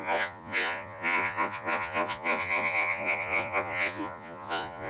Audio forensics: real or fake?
fake